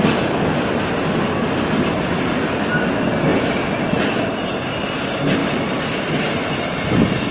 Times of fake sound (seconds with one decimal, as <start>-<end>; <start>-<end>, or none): 5.4-6.2